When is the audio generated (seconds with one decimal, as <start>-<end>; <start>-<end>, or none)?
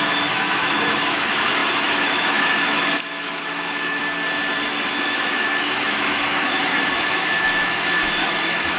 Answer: 0.0-4.0; 4.9-8.8